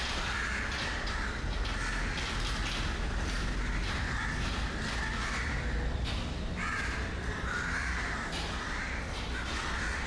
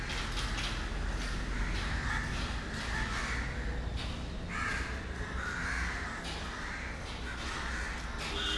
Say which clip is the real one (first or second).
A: second